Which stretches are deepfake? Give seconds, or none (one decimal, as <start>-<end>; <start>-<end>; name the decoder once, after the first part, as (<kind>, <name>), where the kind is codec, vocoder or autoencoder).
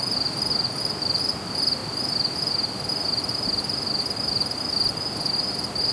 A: none